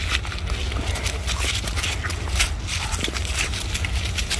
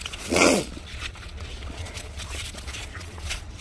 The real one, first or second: first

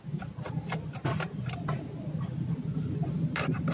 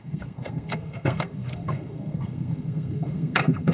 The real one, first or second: first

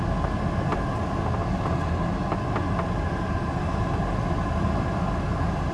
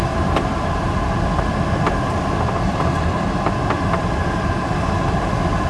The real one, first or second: first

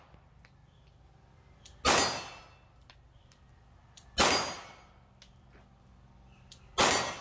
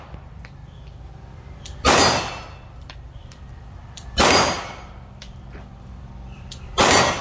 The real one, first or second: first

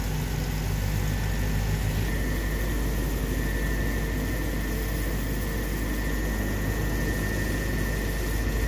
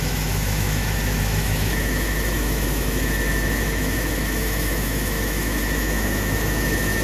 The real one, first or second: first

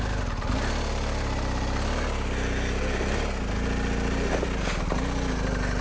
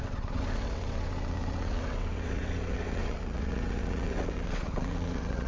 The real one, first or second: first